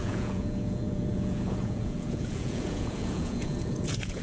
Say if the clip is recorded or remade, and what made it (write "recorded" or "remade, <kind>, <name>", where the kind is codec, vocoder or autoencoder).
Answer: remade, vocoder, Vocos